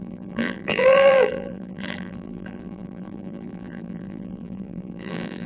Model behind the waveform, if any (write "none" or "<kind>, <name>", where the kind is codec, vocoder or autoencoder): vocoder, BigVGAN v2